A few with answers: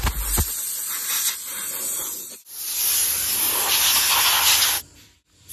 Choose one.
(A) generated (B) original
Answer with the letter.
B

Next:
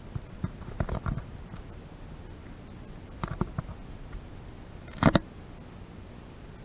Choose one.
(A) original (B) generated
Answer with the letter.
A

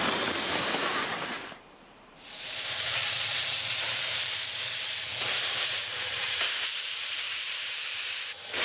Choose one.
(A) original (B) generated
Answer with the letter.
B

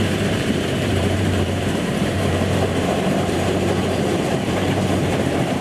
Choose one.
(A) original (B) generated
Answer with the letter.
B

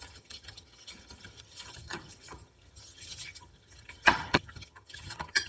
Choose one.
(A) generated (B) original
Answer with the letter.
A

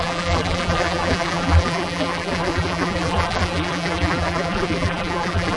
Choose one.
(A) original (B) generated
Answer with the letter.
B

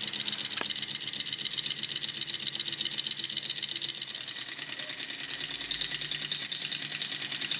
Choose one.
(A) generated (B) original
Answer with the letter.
B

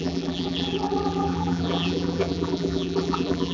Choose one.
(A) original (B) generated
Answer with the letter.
B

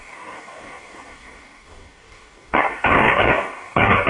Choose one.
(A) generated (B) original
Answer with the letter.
A